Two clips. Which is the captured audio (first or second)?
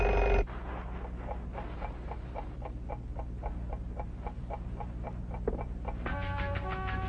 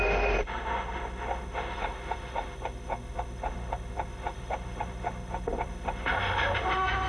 first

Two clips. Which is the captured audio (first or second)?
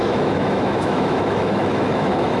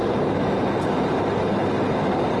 second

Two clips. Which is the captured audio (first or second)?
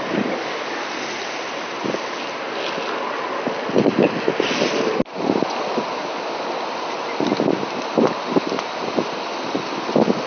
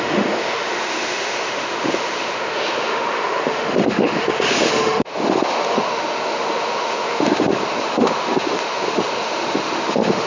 first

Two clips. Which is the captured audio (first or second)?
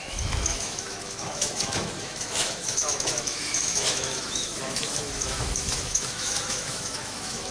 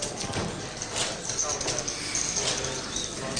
second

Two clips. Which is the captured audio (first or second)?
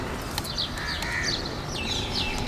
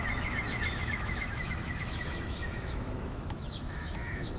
first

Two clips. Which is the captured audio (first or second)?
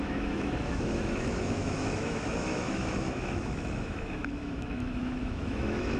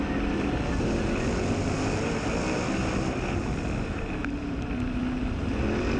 second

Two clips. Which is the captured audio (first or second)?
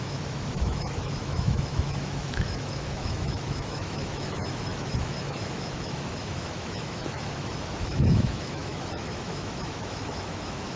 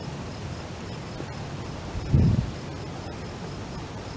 second